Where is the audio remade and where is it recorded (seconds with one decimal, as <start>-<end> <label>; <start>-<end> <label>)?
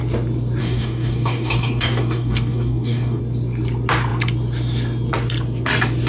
0.0-0.6 recorded; 0.6-3.2 remade; 3.2-6.1 recorded